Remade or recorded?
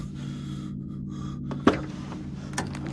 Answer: recorded